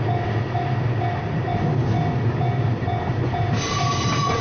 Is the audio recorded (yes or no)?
yes